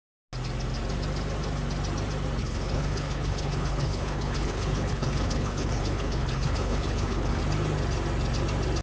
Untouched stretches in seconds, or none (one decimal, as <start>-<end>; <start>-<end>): 0.0-2.4; 7.4-8.8